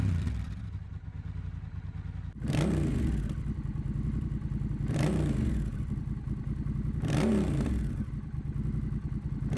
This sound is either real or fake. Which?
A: real